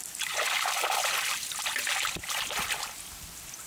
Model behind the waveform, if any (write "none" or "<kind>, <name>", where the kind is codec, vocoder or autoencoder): none